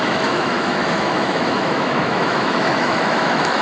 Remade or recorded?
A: remade